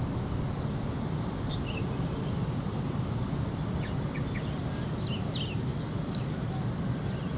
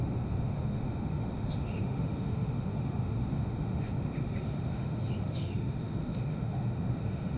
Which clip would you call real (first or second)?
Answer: first